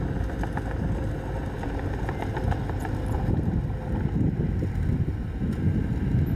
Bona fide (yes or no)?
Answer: yes